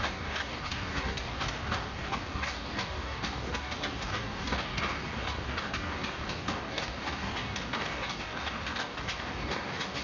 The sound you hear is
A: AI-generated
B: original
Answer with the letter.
A